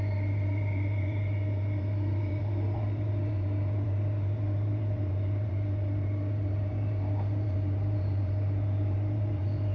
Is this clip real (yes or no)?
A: no